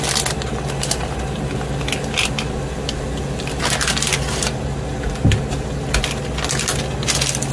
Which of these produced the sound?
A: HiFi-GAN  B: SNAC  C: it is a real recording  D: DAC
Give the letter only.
C